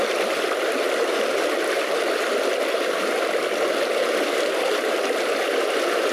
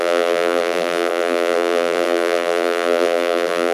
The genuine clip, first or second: first